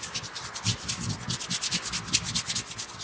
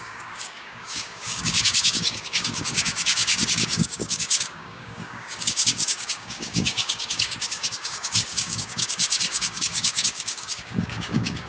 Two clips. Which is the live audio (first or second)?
first